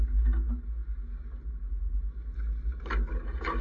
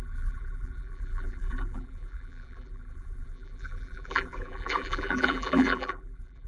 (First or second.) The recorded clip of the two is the first